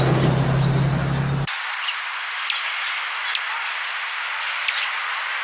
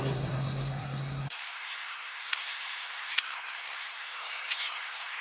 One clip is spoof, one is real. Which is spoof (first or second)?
second